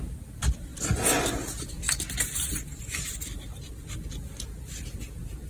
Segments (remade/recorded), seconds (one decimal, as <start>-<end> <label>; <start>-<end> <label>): 0.0-5.5 recorded